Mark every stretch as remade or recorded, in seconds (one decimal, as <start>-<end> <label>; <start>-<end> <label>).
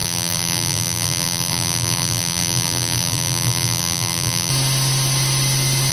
0.0-4.5 remade; 4.5-5.9 recorded